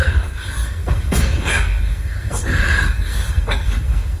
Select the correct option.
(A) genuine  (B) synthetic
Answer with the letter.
B